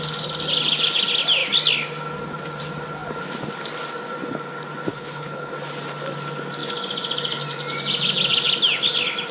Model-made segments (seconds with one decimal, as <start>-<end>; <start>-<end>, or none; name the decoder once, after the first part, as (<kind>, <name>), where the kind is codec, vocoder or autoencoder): 4.9-5.5 (codec, HILCodec)